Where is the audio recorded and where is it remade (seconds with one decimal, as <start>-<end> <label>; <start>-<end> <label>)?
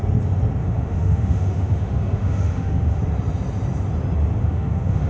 0.0-0.6 recorded; 0.6-3.0 remade; 3.0-4.4 recorded; 4.4-5.1 remade